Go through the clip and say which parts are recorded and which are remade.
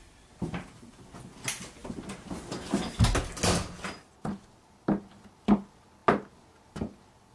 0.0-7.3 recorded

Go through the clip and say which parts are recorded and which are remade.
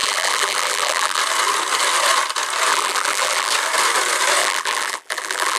0.0-1.2 remade; 1.2-2.7 recorded; 2.7-3.5 remade; 3.5-4.4 recorded; 4.4-5.6 remade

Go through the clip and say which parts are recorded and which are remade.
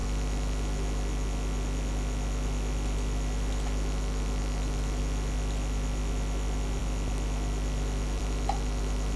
0.0-9.2 recorded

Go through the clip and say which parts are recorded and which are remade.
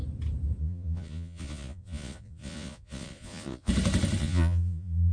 0.0-0.6 recorded; 0.6-3.7 remade; 3.7-4.2 recorded; 4.2-5.1 remade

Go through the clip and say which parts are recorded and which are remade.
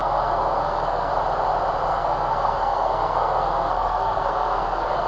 0.0-1.1 remade; 1.1-1.9 recorded; 1.9-5.1 remade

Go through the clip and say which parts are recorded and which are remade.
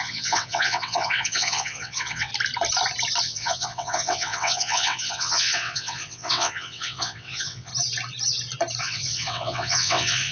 0.0-2.3 remade; 2.3-3.2 recorded; 3.2-7.7 remade; 7.7-8.8 recorded; 8.8-10.3 remade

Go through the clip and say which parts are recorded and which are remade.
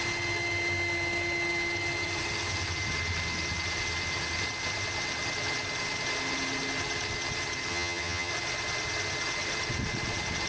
0.0-7.7 recorded; 7.7-8.3 remade; 8.3-10.5 recorded